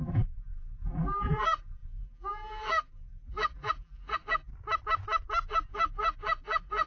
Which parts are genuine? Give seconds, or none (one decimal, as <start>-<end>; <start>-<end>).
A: 4.5-5.4